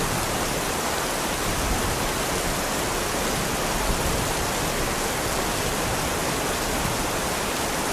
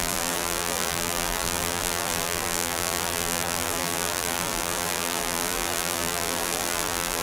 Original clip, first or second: first